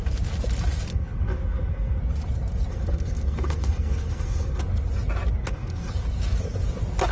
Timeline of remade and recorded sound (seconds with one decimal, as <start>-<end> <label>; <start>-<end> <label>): 0.0-0.9 recorded; 0.9-2.0 remade; 2.0-2.7 recorded; 2.7-4.6 remade; 4.6-5.4 recorded; 5.4-5.9 remade; 5.9-7.1 recorded